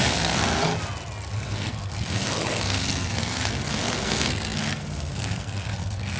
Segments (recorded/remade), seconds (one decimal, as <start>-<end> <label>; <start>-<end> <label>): 0.0-0.7 remade; 0.7-1.5 recorded; 1.5-6.2 remade